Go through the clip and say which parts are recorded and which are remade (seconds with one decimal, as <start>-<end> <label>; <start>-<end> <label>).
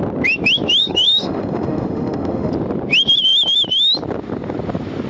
0.0-0.8 recorded; 0.8-2.5 remade; 2.5-5.1 recorded